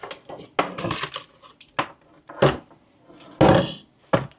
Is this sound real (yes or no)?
yes